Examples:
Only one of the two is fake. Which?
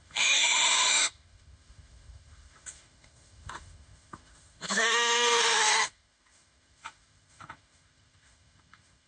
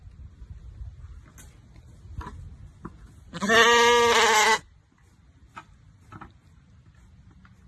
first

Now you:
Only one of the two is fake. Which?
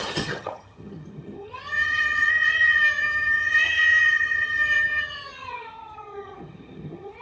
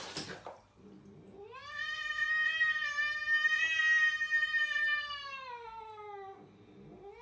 first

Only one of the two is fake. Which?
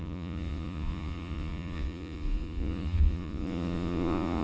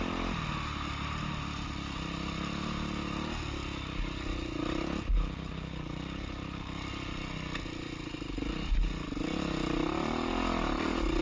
first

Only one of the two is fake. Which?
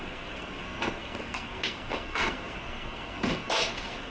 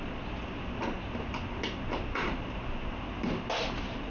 first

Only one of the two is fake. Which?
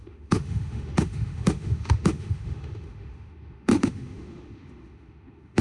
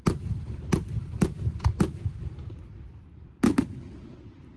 first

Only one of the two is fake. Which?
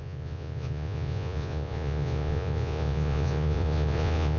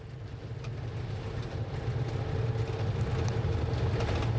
first